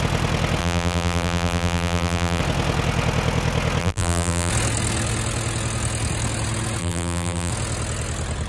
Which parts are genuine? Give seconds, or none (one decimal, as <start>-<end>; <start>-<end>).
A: 0.0-0.6; 2.4-3.8; 4.5-6.8; 7.5-8.5